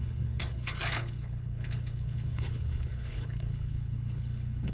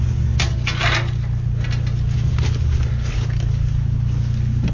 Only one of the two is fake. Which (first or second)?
first